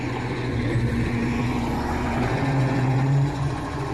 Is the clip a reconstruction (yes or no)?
yes